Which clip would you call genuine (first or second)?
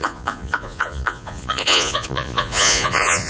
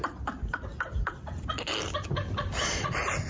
second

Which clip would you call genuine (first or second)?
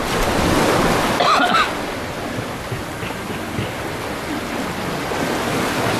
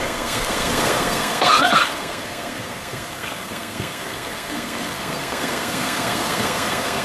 first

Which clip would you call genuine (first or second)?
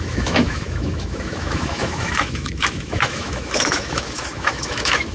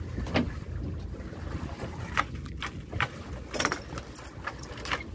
second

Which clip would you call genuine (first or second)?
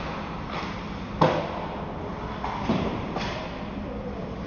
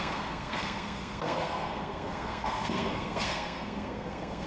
first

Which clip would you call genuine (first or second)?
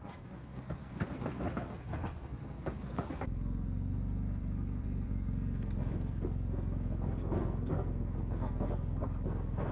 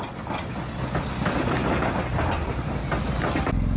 second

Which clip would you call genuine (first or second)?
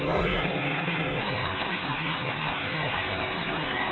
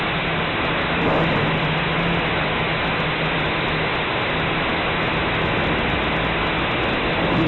second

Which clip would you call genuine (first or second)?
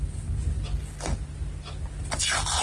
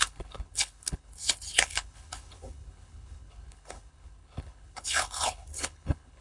first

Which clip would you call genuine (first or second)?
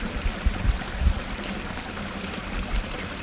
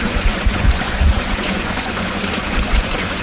first